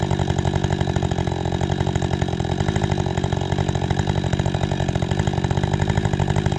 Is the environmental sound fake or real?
real